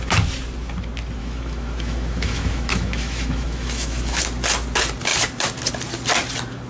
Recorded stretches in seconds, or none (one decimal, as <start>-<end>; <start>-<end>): 0.0-1.2; 4.2-6.7